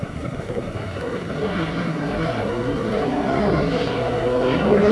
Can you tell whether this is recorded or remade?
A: remade